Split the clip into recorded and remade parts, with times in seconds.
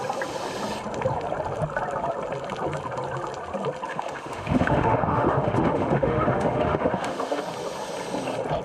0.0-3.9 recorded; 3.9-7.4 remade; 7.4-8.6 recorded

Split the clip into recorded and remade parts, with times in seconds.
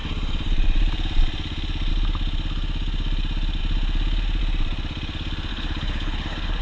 0.0-5.5 recorded; 5.5-6.6 remade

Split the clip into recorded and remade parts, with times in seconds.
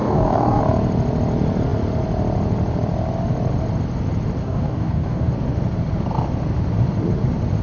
0.0-0.6 remade; 0.6-4.4 recorded; 4.4-5.3 remade; 5.3-7.6 recorded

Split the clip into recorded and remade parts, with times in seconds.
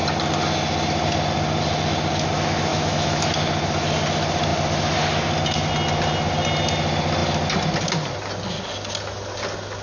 0.0-2.7 recorded; 2.7-3.3 remade; 3.3-9.8 recorded